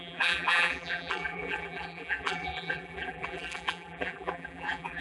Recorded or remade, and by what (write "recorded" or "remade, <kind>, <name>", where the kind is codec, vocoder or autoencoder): remade, vocoder, BigVGAN v2